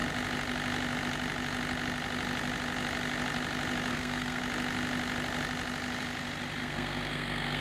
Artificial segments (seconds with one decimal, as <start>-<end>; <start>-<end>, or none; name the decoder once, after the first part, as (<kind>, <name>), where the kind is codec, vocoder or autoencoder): 3.9-4.4 (codec, SNAC); 6.6-7.6

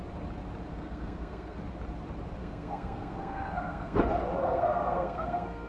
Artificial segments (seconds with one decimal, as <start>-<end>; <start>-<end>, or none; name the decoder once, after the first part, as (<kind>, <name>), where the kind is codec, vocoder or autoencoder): 0.7-1.6 (codec, SNAC); 2.4-4.0; 4.4-5.7

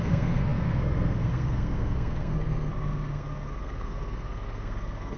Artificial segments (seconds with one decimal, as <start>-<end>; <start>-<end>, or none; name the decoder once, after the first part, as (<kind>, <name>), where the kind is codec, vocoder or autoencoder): 0.0-5.2 (codec, SNAC)

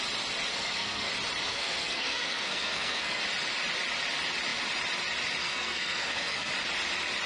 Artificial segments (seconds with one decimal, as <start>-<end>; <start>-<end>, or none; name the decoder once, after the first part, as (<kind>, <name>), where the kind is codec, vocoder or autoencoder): 0.5-1.1 (codec, SNAC); 1.5-3.2; 5.4-6.5

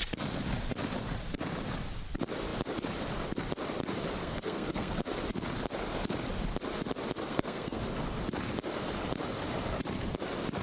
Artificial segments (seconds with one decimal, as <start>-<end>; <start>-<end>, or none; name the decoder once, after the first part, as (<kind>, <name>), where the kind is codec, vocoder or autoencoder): 4.2-5.0 (codec, SNAC); 7.2-7.8

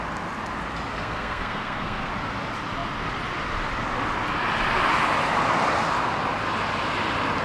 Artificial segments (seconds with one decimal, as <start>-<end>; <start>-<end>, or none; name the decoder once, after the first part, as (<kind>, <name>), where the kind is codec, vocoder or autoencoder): 0.9-2.1 (codec, SNAC)

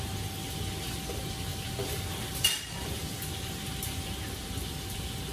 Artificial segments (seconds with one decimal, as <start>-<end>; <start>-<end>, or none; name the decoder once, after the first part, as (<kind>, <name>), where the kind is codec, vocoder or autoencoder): none

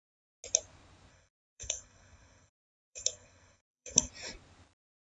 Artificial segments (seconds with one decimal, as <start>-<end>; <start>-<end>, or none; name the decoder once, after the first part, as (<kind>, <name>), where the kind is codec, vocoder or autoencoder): 1.1-4.1 (codec, SNAC)